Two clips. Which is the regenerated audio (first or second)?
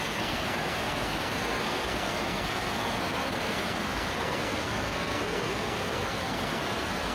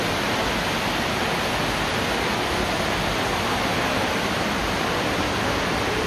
first